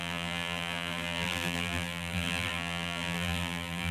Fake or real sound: fake